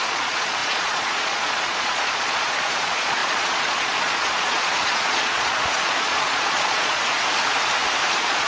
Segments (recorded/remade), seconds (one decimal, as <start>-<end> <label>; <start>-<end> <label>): 0.0-7.0 remade; 7.0-8.1 recorded; 8.1-8.5 remade